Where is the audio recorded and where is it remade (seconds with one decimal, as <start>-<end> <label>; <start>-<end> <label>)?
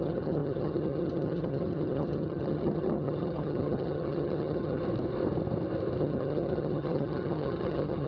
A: 0.0-4.8 remade; 4.8-6.0 recorded; 6.0-8.1 remade